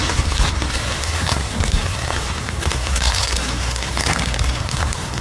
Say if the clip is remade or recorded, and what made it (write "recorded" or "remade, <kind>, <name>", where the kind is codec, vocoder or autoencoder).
remade, codec, SNAC